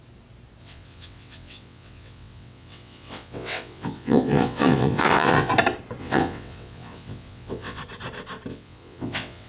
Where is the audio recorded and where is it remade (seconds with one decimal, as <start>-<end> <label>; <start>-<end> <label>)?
0.0-0.6 recorded; 0.6-5.5 remade; 5.5-6.0 recorded; 6.0-7.8 remade; 7.8-8.5 recorded; 8.5-9.5 remade